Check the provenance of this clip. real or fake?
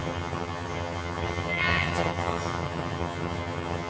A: fake